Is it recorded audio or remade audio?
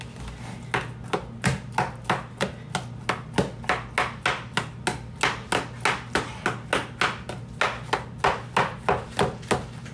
recorded